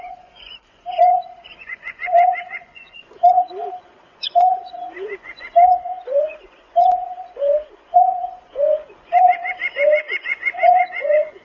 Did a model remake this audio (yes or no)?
yes